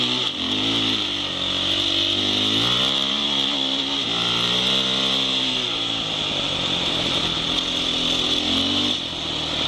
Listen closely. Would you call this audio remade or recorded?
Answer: recorded